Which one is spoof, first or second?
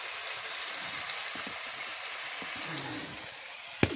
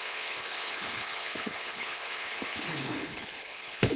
second